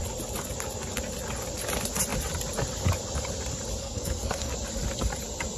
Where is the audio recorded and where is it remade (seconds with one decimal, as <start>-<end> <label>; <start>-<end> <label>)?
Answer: 0.0-3.8 recorded; 3.8-4.5 remade; 4.5-5.6 recorded